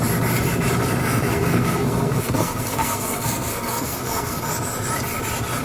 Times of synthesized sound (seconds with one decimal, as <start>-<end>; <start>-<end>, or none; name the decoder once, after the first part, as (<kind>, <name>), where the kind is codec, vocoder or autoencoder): 1.0-4.4 (codec, SNAC)